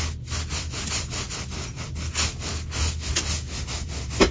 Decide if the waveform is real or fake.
real